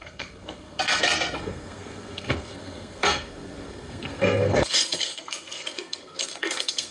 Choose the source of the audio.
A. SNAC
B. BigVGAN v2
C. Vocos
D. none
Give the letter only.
A